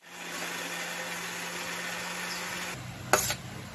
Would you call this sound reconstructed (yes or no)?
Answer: no